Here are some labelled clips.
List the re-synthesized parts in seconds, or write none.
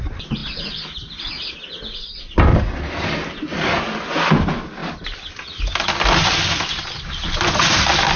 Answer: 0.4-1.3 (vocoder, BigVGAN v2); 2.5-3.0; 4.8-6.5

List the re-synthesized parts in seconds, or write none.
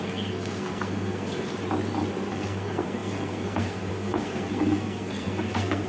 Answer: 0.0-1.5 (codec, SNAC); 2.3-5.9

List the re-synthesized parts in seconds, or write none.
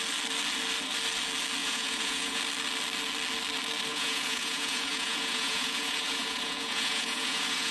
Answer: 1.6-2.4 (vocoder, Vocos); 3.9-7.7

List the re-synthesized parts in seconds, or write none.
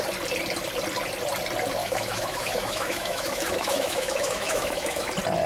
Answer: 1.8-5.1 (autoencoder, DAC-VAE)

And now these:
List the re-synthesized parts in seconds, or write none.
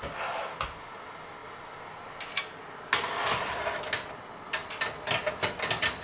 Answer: none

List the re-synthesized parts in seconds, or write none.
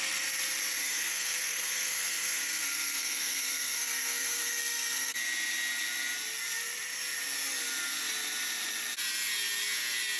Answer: 0.8-5.2 (codec, SNAC)